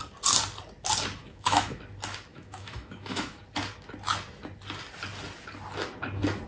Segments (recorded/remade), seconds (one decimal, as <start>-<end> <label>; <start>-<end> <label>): 0.0-1.2 recorded; 1.2-1.8 remade; 1.8-2.3 recorded; 2.3-3.4 remade; 3.4-6.5 recorded